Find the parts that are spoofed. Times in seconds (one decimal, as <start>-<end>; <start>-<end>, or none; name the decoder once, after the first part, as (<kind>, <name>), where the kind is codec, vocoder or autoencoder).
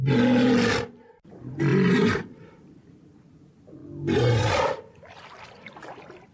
1.7-2.8 (vocoder, BigVGAN v2)